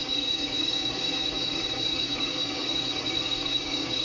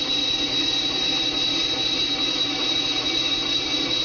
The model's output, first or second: first